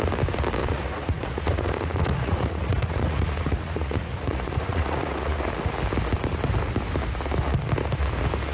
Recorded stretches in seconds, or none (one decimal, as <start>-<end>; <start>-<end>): 0.0-0.6; 5.5-8.5

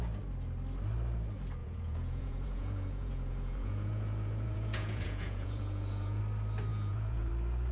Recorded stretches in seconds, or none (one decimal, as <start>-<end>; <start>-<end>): 0.0-1.6; 6.2-6.7; 7.3-7.7

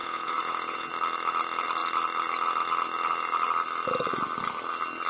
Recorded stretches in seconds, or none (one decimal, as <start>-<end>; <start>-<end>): 0.9-5.1

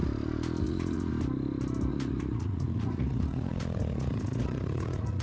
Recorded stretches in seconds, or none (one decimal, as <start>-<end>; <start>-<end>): 0.0-0.6; 1.1-1.9

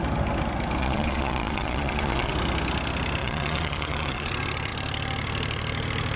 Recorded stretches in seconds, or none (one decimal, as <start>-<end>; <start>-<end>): 0.0-0.8; 2.3-3.2; 4.3-6.2

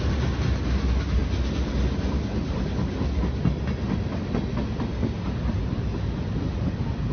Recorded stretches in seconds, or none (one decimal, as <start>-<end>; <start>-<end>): 0.0-7.1